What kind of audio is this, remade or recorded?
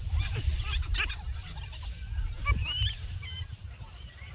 recorded